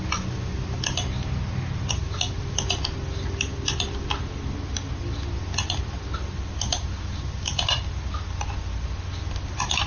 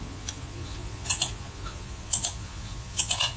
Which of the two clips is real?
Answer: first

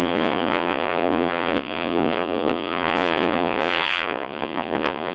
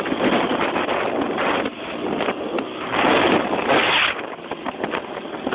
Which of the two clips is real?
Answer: second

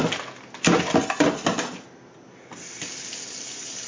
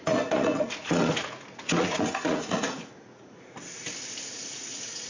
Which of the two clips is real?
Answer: first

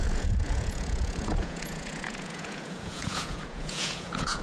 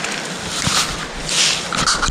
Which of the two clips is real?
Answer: second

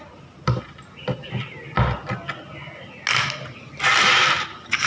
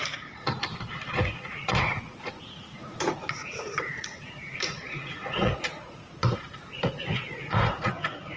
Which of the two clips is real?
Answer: first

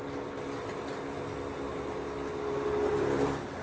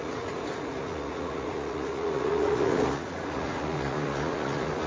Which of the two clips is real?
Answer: first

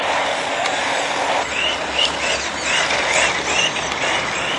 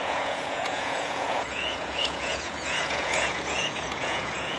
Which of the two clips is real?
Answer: first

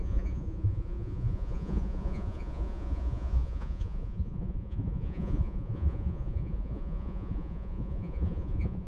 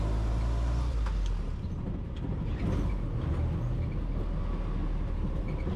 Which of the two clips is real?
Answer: second